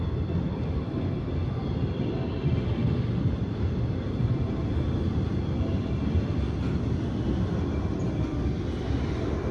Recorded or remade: recorded